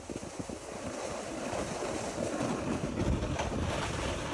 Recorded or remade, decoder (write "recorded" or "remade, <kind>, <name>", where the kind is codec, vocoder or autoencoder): recorded